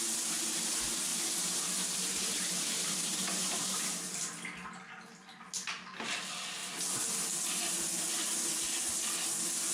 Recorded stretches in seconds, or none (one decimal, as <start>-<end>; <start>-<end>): 0.0-1.1; 3.9-9.7